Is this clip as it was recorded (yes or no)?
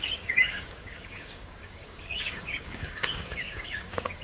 no